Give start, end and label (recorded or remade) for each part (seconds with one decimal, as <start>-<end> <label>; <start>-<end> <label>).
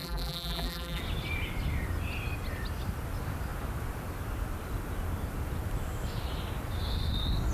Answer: 0.0-1.0 remade; 1.0-7.5 recorded